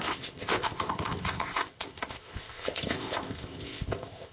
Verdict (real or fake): fake